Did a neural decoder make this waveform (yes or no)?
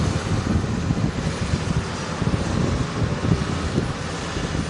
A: no